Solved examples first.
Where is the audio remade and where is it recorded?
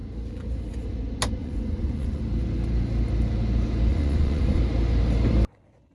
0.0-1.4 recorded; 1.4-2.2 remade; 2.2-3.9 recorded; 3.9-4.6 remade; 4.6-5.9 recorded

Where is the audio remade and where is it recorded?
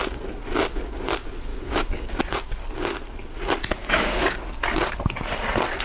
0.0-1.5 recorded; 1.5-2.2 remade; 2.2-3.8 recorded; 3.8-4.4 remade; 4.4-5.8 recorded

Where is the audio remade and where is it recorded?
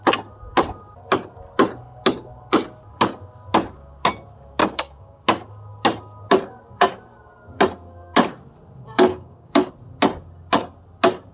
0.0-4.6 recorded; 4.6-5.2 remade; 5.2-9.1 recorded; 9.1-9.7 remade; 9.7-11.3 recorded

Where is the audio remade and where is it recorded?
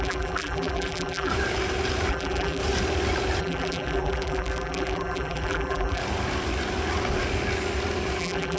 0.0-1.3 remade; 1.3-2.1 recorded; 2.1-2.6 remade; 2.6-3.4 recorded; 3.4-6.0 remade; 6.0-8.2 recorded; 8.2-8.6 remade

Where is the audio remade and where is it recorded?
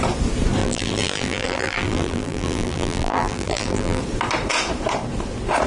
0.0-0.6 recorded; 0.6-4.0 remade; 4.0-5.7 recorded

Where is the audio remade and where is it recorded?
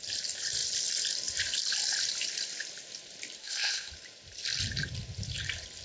0.0-3.4 recorded; 3.4-3.9 remade; 3.9-5.8 recorded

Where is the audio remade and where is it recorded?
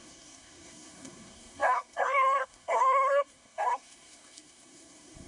0.0-5.3 remade